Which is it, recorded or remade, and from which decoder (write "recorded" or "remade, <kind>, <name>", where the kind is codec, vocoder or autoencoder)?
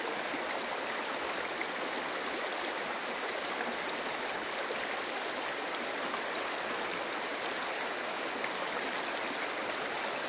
recorded